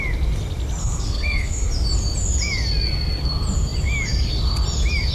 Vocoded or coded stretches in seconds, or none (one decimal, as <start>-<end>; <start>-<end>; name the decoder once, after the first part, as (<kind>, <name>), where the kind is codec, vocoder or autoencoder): 0.8-1.7 (codec, SNAC)